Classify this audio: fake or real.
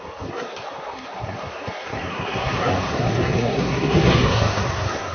fake